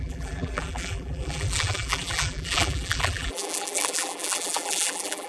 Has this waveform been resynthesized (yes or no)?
yes